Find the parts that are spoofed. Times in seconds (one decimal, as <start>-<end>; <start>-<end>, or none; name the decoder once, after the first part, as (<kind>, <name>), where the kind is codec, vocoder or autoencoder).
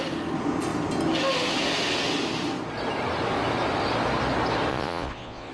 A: 4.7-5.5 (vocoder, Vocos)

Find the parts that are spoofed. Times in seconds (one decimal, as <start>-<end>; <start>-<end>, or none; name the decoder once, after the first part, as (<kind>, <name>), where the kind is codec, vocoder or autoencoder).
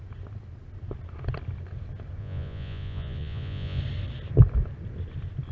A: 2.2-3.8 (vocoder, Vocos)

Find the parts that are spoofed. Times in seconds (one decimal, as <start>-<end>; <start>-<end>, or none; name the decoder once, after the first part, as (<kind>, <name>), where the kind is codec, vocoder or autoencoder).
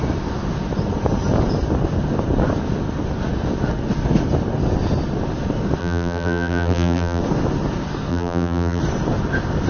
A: 5.8-7.2 (vocoder, BigVGAN v2); 8.1-8.8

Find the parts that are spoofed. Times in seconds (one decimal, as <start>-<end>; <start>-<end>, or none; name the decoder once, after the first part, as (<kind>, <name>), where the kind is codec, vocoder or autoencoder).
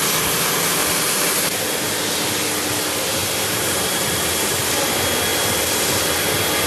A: 0.8-1.9 (vocoder, BigVGAN v2); 3.2-4.7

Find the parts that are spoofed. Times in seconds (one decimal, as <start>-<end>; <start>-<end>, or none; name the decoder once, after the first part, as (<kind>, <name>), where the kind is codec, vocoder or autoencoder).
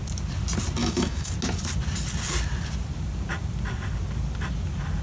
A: 0.8-1.3 (autoencoder, DAC-VAE)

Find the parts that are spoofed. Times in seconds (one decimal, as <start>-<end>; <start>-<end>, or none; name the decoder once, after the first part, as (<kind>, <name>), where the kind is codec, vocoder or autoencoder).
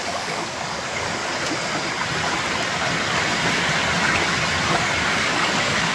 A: 0.0-1.2 (codec, DAC); 4.7-5.9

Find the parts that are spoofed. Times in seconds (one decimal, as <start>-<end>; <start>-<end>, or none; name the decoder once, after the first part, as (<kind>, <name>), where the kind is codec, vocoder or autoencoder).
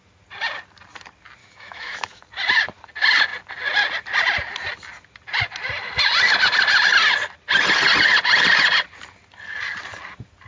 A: 1.4-2.2 (autoencoder, DAC-VAE)